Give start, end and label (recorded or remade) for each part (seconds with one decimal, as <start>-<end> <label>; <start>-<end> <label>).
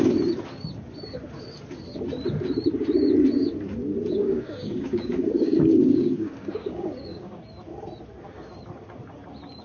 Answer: 0.0-4.2 recorded; 4.2-7.4 remade; 7.4-9.6 recorded